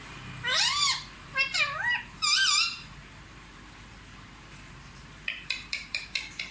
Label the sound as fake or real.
fake